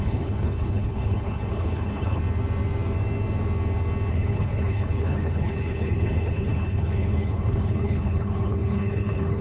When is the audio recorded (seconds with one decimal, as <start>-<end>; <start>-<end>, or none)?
2.2-4.1